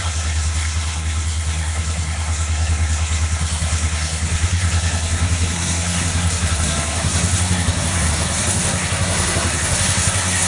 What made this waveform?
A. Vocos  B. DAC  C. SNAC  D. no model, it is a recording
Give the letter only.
C